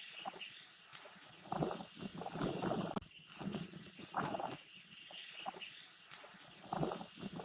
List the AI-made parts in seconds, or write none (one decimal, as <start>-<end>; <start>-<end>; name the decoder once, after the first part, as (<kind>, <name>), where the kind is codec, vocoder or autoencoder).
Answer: 0.9-1.5 (vocoder, Vocos); 3.5-4.5